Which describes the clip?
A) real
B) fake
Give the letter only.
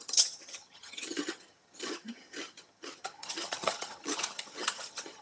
B